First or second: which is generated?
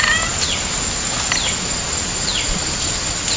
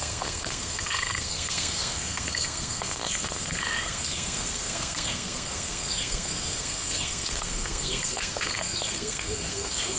second